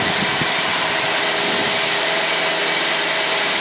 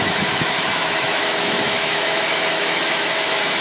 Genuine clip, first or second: first